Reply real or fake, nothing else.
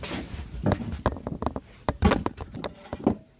real